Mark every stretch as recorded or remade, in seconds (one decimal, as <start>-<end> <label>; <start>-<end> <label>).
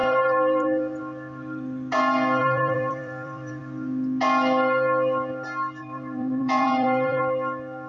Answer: 0.0-1.0 remade; 1.0-2.4 recorded; 2.4-3.6 remade; 3.6-5.8 recorded; 5.8-7.2 remade; 7.2-7.9 recorded